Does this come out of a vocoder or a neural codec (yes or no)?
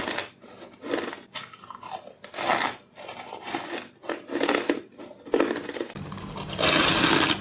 no